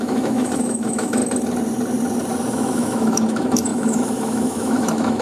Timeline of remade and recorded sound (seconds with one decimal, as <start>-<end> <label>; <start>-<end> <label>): 0.0-1.2 remade; 1.2-2.5 recorded; 2.5-5.2 remade